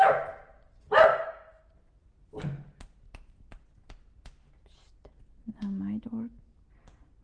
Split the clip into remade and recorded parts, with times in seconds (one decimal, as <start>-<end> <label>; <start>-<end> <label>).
0.0-1.1 recorded; 1.1-1.7 remade; 1.7-7.2 recorded